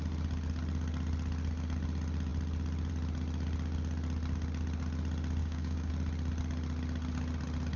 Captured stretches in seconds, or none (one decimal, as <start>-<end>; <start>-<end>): 0.0-5.4; 5.9-7.8